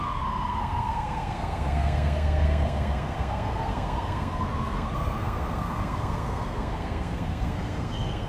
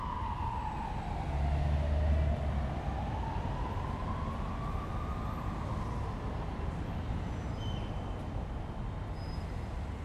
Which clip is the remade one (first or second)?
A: first